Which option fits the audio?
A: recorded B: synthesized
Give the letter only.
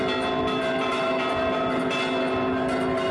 A